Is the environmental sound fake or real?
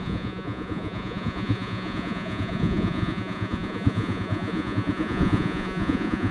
fake